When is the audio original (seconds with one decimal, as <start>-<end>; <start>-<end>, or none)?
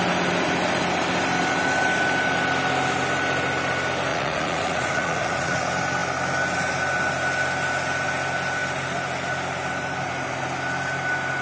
0.0-4.1; 5.6-11.4